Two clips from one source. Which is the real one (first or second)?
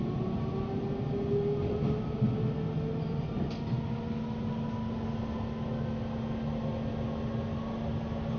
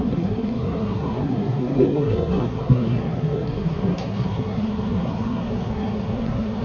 first